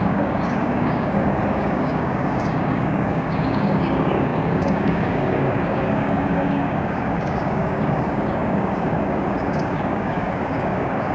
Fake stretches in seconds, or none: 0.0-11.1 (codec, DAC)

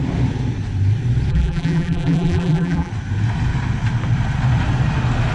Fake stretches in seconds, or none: 1.3-2.9 (vocoder, BigVGAN v2)

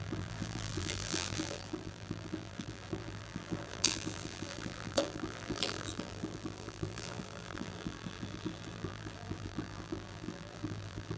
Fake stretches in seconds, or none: 0.0-11.2 (vocoder, BigVGAN v2)

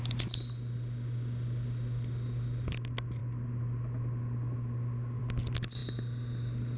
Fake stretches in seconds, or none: none

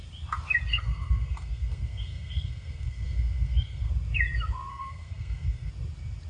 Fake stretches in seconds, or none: 0.7-3.9 (codec, SNAC); 4.7-5.7